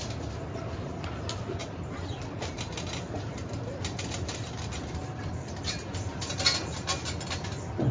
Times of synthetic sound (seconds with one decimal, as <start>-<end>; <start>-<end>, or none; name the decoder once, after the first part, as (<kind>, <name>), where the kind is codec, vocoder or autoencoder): none